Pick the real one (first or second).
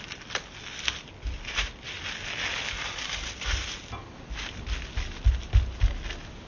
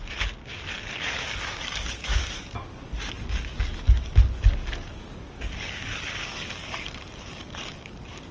first